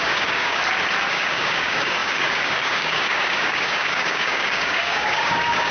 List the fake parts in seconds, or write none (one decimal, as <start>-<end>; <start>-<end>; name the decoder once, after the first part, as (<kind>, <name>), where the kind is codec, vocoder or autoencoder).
0.0-0.6 (codec, DAC); 1.1-5.7